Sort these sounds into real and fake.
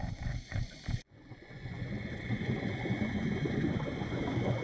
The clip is fake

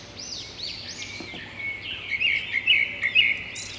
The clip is real